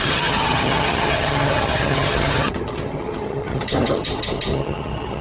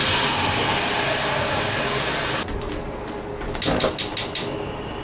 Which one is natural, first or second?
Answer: second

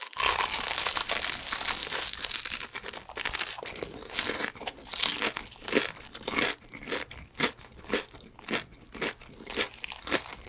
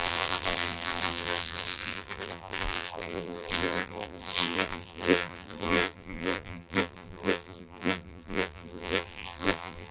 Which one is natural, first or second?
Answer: first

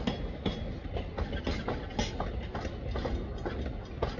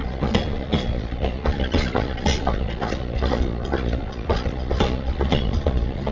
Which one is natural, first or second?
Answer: first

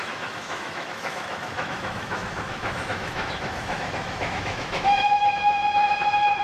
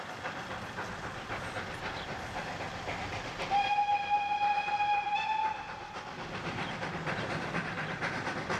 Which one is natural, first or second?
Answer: second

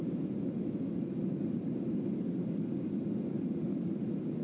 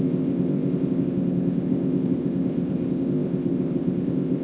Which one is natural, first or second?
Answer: first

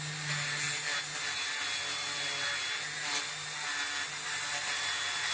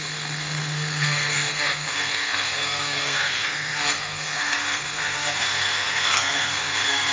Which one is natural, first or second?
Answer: first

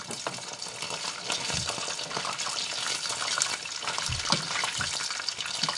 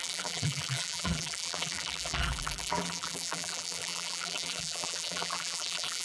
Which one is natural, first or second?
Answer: first